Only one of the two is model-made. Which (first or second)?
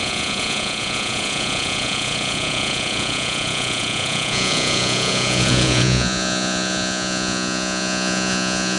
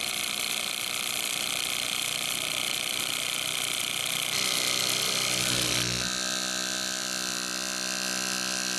first